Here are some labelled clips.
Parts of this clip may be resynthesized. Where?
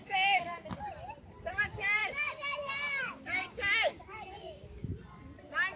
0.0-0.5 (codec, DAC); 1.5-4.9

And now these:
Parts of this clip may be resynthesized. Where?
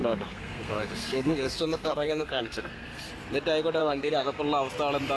0.0-3.1 (codec, SNAC); 3.8-4.4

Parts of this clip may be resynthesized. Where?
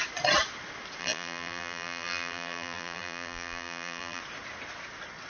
1.0-4.2 (vocoder, BigVGAN v2)